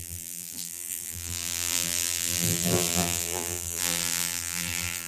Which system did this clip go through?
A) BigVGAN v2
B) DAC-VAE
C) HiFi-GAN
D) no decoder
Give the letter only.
A